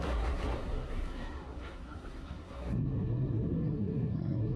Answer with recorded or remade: remade